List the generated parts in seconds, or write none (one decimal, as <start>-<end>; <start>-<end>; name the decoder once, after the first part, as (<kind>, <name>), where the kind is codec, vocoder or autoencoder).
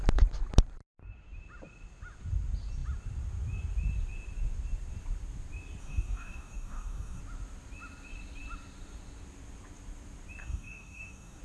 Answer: 5.8-7.2 (codec, DAC); 10.4-11.4